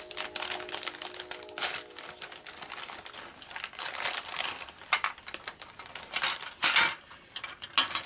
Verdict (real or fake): real